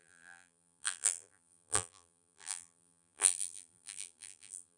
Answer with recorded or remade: remade